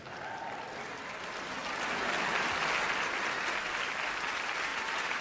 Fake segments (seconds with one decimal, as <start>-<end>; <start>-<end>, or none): 4.7-5.2